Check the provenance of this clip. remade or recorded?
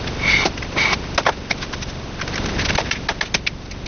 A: recorded